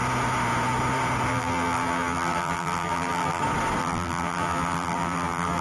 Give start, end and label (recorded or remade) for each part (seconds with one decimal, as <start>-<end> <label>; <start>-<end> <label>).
0.0-1.3 recorded; 1.3-3.4 remade; 3.4-3.8 recorded; 3.8-5.6 remade